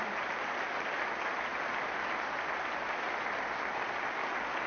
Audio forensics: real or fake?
real